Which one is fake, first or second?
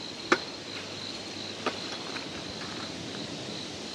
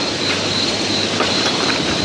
second